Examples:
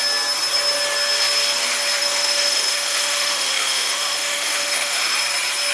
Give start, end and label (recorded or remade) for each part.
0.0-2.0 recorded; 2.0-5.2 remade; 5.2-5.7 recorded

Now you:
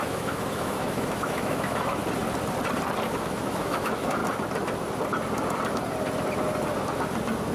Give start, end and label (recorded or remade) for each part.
0.0-2.0 remade; 2.0-3.1 recorded; 3.1-4.2 remade; 4.2-7.5 recorded

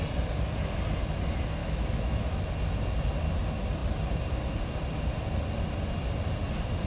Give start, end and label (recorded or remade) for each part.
0.0-1.6 recorded; 1.6-2.4 remade; 2.4-6.9 recorded

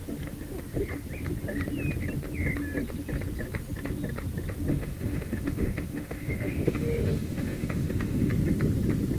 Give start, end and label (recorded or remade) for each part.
0.0-4.7 recorded; 4.7-8.3 remade; 8.3-9.2 recorded

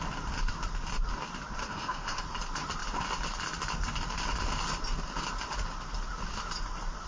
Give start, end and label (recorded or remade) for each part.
0.0-1.6 recorded; 1.6-2.2 remade; 2.2-7.1 recorded

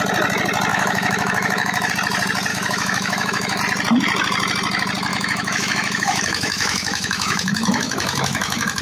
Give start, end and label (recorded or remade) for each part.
0.0-0.7 recorded; 0.7-1.9 remade; 1.9-2.5 recorded; 2.5-3.6 remade; 3.6-5.1 recorded; 5.1-8.8 remade

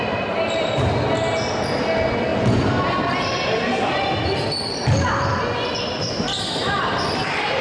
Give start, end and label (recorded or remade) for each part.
0.0-7.6 recorded